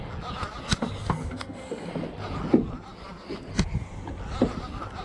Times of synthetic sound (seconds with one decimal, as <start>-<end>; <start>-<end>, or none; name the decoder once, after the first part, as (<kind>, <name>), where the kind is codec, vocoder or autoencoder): 1.0-1.9 (codec, SNAC)